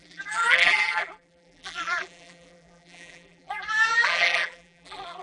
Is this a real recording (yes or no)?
no